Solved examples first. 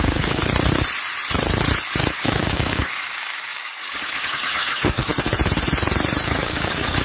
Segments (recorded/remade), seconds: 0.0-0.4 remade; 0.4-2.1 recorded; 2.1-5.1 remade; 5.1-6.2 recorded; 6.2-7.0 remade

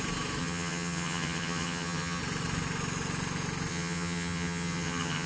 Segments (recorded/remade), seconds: 0.0-0.4 recorded; 0.4-2.2 remade; 2.2-3.7 recorded; 3.7-5.3 remade

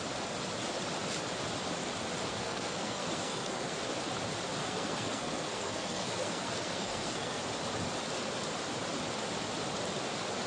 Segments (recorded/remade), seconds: 0.0-2.3 recorded; 2.3-3.9 remade; 3.9-4.6 recorded; 4.6-7.4 remade; 7.4-10.5 recorded